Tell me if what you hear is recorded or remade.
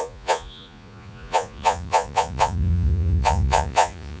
remade